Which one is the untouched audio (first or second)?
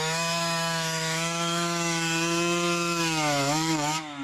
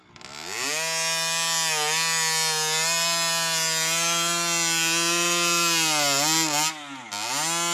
second